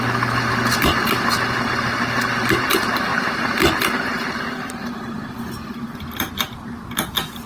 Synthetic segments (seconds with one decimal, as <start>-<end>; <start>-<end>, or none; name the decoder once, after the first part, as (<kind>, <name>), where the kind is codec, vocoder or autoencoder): none